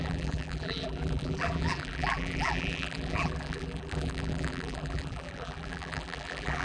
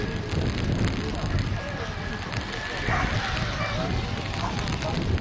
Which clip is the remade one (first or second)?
first